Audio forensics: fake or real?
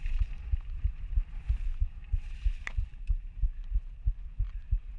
fake